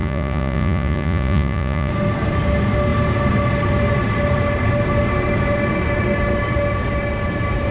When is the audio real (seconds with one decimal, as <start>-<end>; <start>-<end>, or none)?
1.9-7.7